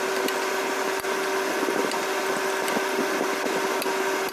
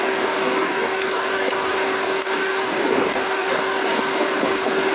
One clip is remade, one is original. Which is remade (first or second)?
second